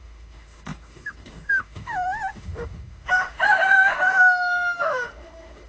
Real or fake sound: fake